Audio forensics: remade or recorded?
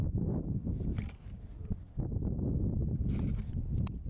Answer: recorded